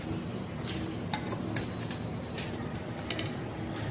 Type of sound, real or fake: real